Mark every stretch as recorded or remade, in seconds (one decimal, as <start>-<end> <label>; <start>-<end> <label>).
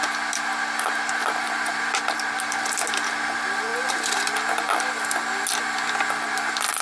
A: 0.0-6.8 recorded